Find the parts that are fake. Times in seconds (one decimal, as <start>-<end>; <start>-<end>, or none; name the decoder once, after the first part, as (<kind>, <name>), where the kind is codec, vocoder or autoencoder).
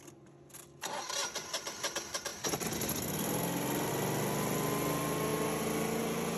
none